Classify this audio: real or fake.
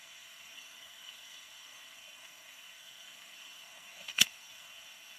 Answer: fake